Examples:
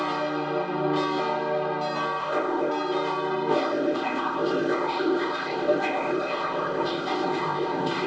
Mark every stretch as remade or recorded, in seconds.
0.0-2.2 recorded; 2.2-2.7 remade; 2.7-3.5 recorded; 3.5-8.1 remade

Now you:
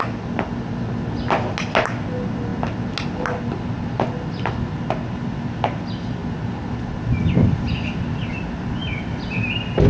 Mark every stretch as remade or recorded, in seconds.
0.0-9.9 recorded